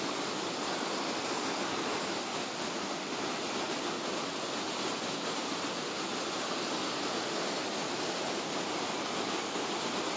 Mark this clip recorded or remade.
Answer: recorded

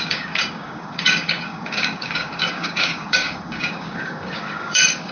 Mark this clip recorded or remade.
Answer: remade